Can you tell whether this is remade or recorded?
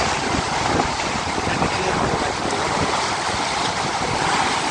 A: recorded